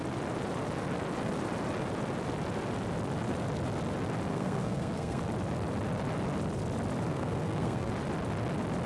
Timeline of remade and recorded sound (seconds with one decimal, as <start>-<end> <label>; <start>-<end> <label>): 0.0-4.3 recorded; 4.3-5.2 remade; 5.2-7.1 recorded; 7.1-7.9 remade; 7.9-8.9 recorded